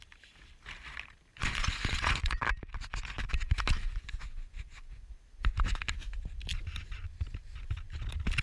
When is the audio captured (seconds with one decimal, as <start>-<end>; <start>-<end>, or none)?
0.0-1.3; 2.4-4.2; 5.1-8.4

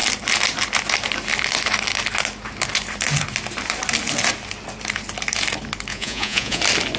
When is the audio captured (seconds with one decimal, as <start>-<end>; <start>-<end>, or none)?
0.0-5.9; 6.6-7.0

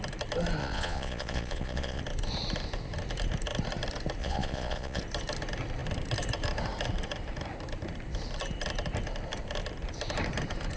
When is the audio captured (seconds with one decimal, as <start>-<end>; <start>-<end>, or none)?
0.0-0.6; 2.0-4.2; 5.0-10.8

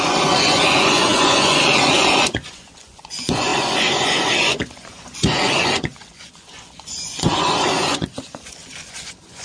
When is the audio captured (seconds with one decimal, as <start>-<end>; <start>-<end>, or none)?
none